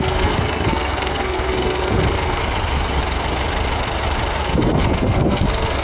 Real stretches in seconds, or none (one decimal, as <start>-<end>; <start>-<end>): 2.4-4.4